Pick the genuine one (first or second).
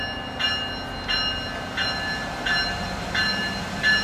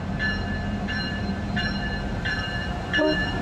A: first